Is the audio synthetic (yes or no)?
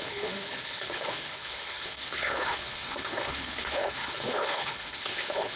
yes